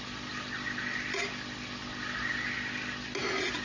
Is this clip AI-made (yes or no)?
no